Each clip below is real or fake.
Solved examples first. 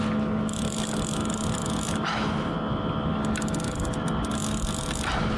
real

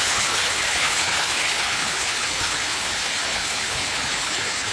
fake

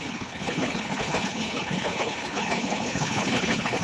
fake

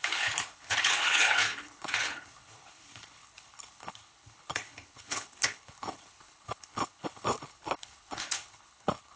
fake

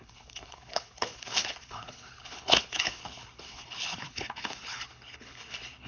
fake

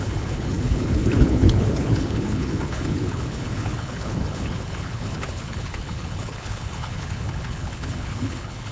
fake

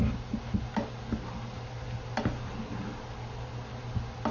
real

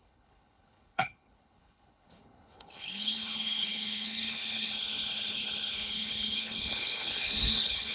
fake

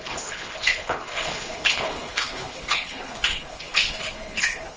fake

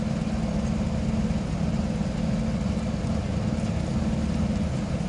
real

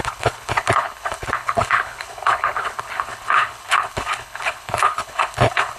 fake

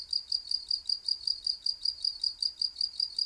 real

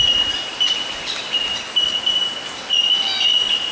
real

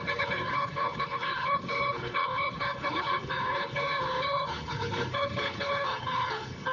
fake